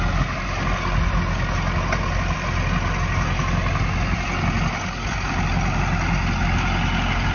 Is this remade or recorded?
recorded